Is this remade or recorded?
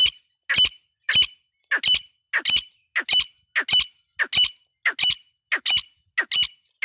recorded